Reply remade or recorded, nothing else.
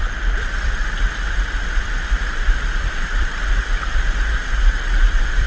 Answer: remade